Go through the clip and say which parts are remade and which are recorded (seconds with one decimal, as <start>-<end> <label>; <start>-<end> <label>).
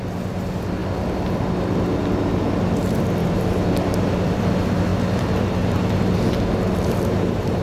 0.0-7.6 recorded